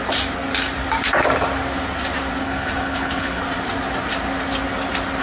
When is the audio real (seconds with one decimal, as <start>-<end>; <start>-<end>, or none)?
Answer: 0.0-2.4; 3.4-5.2